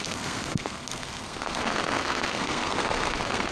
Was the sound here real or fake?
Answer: fake